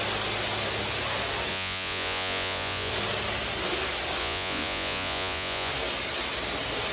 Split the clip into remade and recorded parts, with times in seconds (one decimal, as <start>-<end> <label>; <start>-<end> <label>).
0.0-1.5 recorded; 1.5-2.9 remade; 2.9-4.2 recorded; 4.2-5.7 remade; 5.7-6.9 recorded